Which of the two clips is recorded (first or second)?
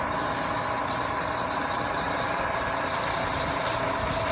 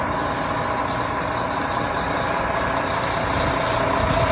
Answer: second